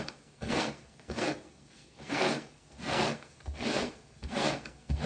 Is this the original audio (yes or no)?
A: no